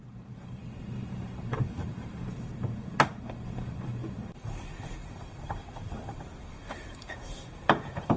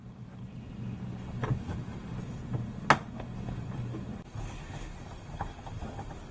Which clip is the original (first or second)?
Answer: second